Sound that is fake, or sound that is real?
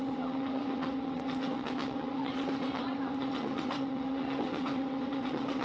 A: fake